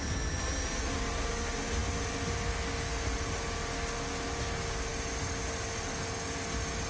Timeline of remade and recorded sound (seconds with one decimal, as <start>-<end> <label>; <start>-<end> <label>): 0.0-6.9 recorded